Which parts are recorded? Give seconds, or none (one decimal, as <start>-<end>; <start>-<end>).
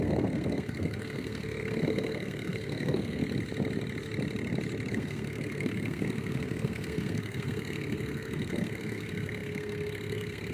3.2-4.9